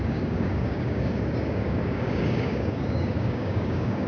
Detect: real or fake fake